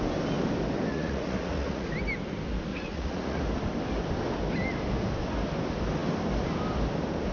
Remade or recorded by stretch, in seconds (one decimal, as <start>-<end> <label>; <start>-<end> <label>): 0.0-0.9 recorded; 0.9-1.9 remade; 1.9-2.7 recorded; 2.7-3.4 remade; 3.4-7.3 recorded